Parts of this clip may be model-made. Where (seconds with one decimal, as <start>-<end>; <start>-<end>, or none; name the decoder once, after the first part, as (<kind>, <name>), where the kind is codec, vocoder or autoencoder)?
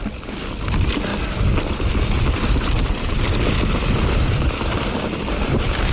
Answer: 0.0-5.9 (vocoder, BigVGAN v2)